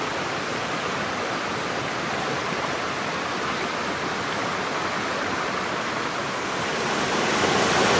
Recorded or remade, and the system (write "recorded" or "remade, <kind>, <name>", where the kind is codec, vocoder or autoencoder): recorded